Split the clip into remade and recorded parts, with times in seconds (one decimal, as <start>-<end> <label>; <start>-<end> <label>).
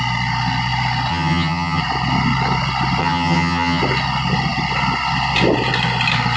0.0-1.1 recorded; 1.1-1.8 remade; 1.8-3.0 recorded; 3.0-3.8 remade; 3.8-6.4 recorded